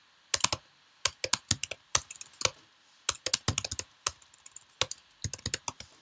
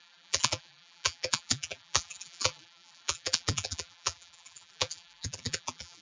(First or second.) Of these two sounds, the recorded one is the first